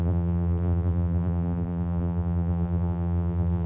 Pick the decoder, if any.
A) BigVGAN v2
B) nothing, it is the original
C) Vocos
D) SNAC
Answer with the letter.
A